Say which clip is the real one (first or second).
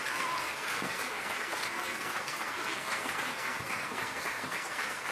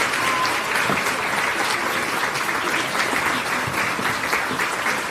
second